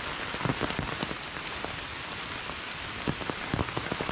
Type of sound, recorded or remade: recorded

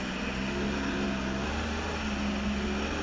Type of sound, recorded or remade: recorded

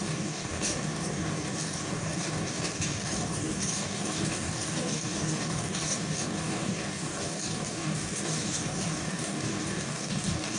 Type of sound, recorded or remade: remade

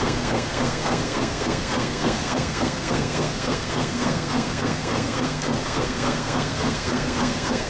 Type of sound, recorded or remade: remade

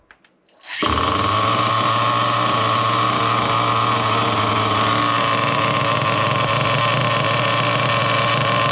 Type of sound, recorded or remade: recorded